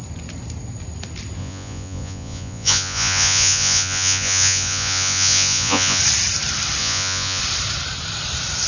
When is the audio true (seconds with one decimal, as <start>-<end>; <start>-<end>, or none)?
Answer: 0.0-1.4; 6.0-6.8; 7.4-8.7